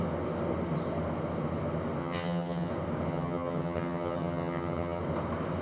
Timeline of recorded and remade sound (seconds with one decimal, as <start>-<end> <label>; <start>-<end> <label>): 0.0-2.0 recorded; 2.0-2.7 remade; 2.7-3.1 recorded; 3.1-5.0 remade; 5.0-5.6 recorded